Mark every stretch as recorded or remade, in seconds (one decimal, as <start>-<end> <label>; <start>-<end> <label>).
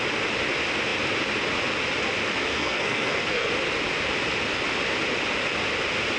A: 0.0-2.5 recorded; 2.5-3.5 remade; 3.5-6.2 recorded